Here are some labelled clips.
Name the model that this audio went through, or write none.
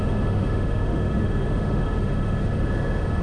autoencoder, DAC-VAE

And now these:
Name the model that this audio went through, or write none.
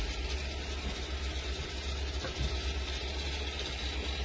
none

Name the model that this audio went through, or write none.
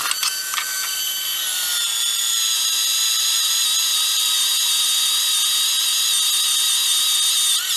none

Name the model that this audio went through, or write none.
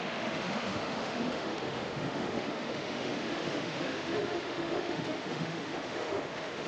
autoencoder, DAC-VAE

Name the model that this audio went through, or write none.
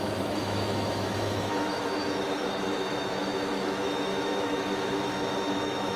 autoencoder, DAC-VAE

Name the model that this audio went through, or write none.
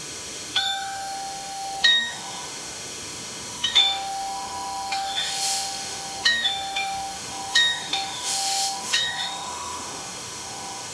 autoencoder, DAC-VAE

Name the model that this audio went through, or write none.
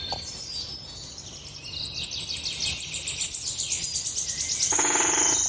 none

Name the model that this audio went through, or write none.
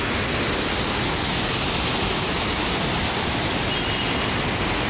none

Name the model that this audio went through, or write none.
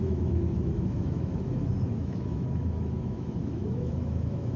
autoencoder, DAC-VAE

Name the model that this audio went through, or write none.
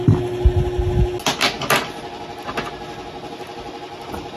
none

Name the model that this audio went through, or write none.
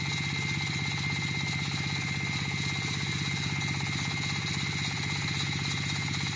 none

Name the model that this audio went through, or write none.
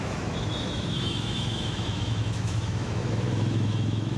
autoencoder, DAC-VAE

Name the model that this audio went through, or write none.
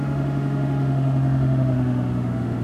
autoencoder, DAC-VAE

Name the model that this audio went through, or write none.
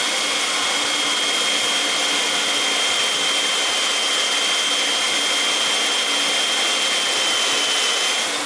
none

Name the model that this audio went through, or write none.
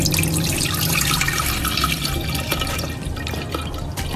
none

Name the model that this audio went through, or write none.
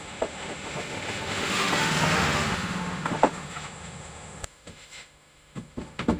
autoencoder, DAC-VAE